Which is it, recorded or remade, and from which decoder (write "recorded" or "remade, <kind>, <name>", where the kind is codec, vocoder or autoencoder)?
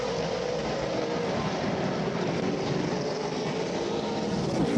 recorded